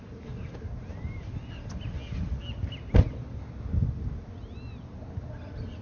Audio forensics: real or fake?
real